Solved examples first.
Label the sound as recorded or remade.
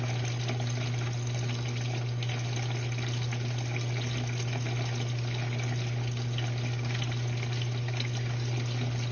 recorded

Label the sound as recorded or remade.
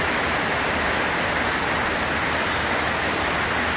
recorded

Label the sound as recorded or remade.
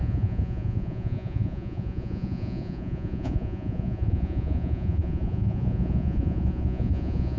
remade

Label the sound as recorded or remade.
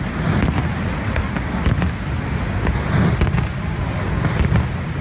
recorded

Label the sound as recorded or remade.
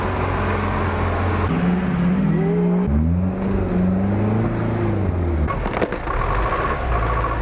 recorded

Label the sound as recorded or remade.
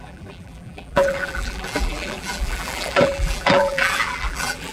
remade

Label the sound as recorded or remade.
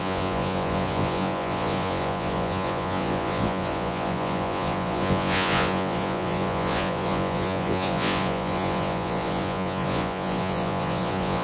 remade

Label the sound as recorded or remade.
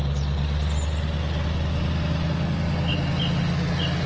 recorded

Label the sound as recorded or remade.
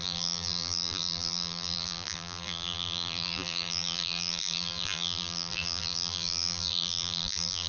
remade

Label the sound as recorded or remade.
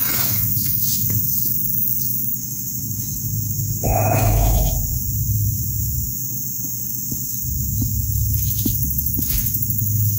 remade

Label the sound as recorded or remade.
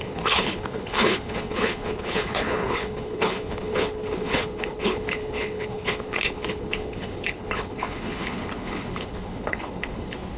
remade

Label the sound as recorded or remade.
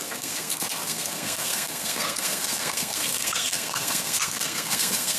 remade